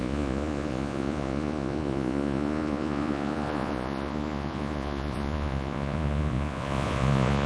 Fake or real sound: fake